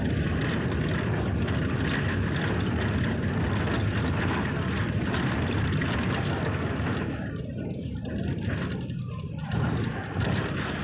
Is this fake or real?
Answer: real